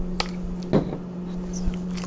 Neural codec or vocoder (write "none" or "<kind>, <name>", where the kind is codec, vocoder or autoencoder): none